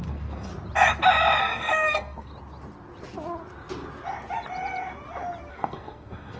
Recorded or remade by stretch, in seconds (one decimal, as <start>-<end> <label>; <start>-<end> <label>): 0.0-0.5 remade; 0.5-1.4 recorded; 1.4-2.3 remade; 2.3-5.5 recorded; 5.5-6.4 remade